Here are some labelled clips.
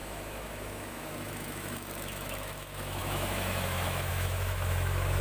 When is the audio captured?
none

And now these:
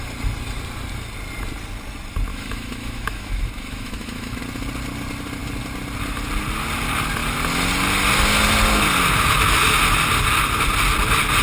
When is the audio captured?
0.0-2.3; 4.4-11.4

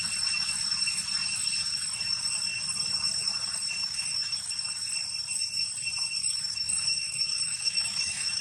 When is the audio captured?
0.0-3.8; 4.5-6.2

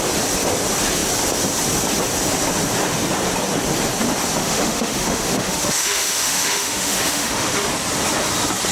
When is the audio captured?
0.0-4.4; 7.5-8.7

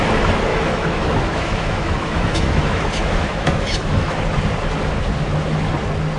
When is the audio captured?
0.0-0.5; 4.2-6.2

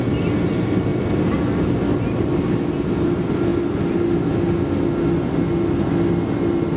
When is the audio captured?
0.0-6.8